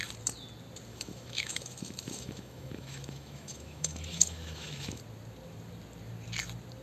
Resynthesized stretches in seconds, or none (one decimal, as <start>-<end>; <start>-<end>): 0.9-5.0